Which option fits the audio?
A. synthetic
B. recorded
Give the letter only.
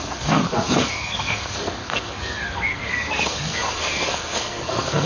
A